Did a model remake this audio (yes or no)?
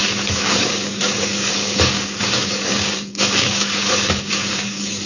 yes